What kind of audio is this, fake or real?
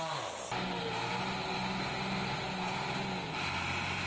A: real